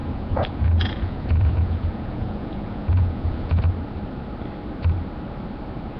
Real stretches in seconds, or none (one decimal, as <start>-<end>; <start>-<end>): 3.6-6.0